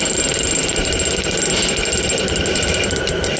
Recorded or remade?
recorded